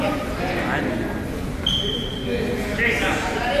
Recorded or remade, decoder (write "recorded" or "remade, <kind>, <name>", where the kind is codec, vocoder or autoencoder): recorded